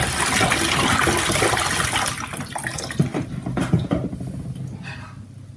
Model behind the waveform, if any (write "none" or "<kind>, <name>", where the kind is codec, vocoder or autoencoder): none